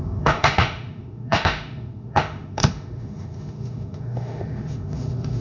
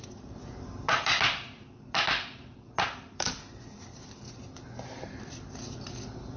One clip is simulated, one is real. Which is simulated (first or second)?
first